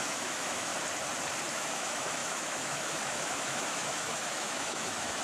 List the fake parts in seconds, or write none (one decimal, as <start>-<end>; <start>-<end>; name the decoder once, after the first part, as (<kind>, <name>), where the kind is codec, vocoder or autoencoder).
0.0-0.7 (autoencoder, DAC-VAE); 1.5-5.2